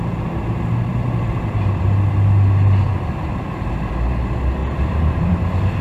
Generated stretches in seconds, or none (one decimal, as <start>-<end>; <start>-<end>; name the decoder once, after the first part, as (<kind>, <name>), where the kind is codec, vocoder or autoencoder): none